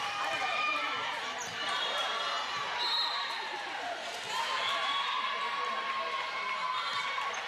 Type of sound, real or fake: fake